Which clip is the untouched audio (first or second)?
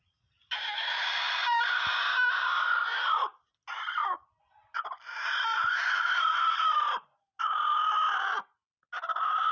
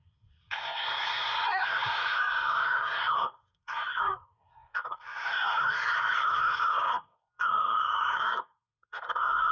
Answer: first